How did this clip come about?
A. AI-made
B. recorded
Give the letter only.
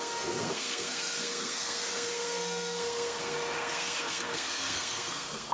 A